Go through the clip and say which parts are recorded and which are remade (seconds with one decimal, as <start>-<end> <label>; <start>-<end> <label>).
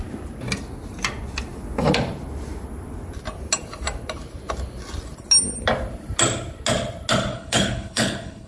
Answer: 0.0-7.3 recorded; 7.3-8.5 remade